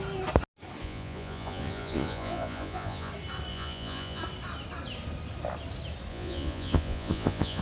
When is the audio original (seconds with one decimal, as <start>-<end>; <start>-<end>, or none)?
0.0-0.8; 3.1-3.5; 4.2-6.1